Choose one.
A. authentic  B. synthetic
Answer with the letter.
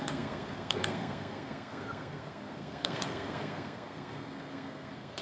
B